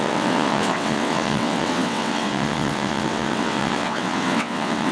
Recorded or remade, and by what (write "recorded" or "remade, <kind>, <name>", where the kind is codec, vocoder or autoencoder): remade, vocoder, WaveNeXt